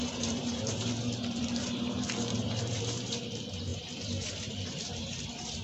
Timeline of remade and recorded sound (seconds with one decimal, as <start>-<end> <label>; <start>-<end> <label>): 0.0-5.6 remade